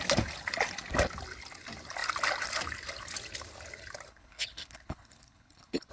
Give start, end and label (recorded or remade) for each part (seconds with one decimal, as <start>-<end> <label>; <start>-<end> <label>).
0.0-4.1 recorded; 4.1-5.9 remade